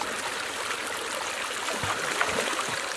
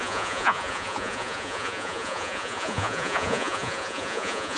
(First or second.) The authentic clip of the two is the first